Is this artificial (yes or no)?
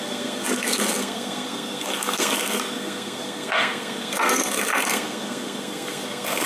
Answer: yes